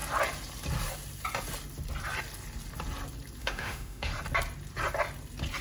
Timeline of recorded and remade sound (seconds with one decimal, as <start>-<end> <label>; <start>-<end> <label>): 0.0-3.4 recorded; 3.4-4.1 remade; 4.1-5.6 recorded